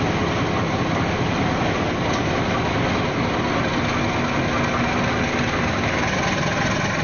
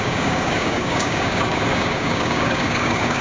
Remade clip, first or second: second